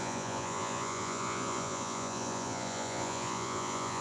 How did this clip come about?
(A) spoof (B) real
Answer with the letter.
A